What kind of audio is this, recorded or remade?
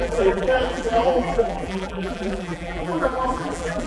remade